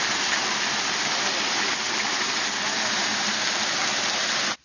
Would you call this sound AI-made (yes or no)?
no